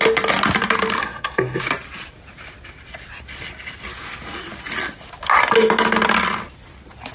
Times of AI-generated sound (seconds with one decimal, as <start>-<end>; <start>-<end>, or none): 1.0-1.6

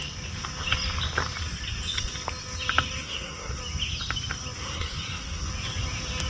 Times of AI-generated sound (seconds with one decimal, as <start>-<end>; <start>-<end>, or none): 3.0-3.6; 4.6-5.5

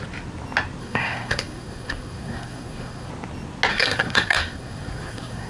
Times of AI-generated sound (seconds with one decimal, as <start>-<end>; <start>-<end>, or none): 0.8-3.1; 3.7-5.5

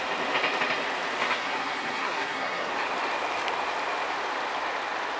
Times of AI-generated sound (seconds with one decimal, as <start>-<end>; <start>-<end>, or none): 1.2-2.7

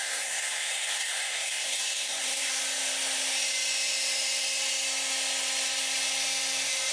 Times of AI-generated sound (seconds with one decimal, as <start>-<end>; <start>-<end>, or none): 0.0-2.6